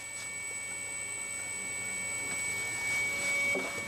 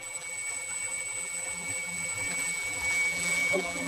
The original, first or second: first